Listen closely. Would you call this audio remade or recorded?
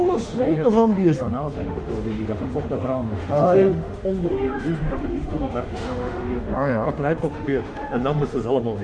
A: remade